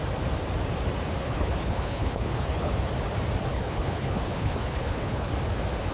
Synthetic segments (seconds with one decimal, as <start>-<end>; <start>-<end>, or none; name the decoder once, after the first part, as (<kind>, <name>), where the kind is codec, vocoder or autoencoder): 1.2-2.7 (codec, HILCodec); 3.5-5.3